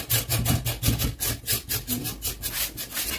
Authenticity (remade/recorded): recorded